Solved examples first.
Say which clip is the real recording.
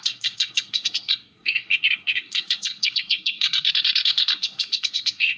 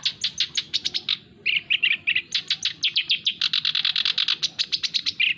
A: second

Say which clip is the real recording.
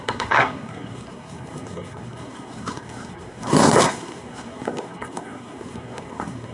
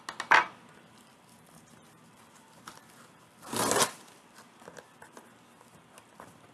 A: second